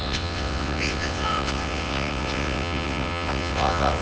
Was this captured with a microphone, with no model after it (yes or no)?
no